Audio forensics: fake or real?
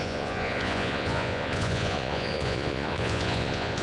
fake